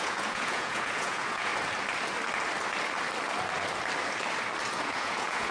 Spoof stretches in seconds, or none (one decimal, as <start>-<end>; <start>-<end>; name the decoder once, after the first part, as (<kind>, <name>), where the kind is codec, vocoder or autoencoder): 0.0-1.5 (vocoder, Vocos); 4.8-5.5